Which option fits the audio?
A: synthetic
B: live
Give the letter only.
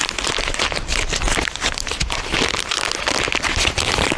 B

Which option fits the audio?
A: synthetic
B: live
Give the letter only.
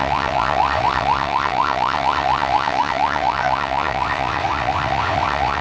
A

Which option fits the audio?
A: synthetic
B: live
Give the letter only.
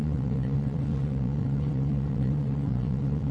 A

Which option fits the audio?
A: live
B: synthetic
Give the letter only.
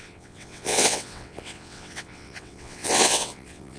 B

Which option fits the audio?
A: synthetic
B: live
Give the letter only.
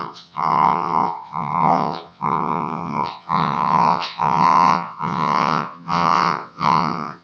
A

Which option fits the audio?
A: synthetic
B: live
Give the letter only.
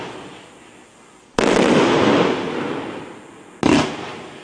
B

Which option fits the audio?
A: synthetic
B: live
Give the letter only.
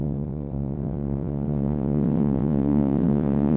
A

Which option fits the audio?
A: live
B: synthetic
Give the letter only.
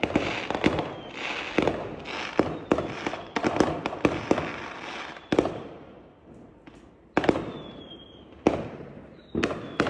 A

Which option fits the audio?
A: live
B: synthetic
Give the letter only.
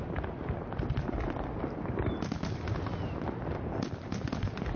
A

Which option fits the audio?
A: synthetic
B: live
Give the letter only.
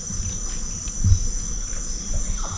B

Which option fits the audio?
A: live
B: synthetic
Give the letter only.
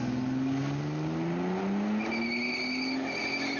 A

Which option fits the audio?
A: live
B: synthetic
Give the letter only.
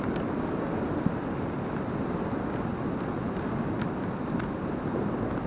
A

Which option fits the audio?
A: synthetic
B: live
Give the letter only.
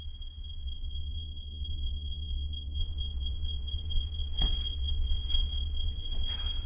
A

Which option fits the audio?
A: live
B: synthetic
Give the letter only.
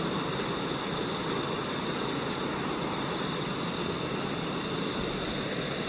A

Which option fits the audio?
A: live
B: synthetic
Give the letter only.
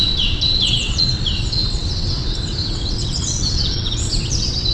B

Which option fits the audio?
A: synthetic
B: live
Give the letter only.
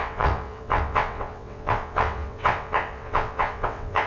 A